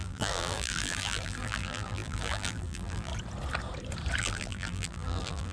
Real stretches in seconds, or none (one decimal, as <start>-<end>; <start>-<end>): 3.1-4.2